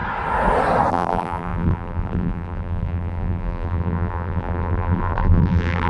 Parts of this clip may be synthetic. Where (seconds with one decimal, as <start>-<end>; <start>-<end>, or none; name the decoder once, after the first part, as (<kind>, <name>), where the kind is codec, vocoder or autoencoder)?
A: 0.9-5.9 (vocoder, BigVGAN v2)